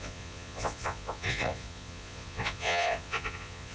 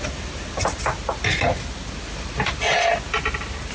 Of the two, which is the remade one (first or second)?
first